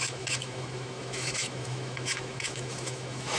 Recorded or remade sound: remade